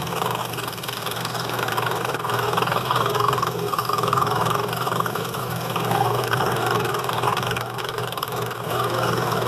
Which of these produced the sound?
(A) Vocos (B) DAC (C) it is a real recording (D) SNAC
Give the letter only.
B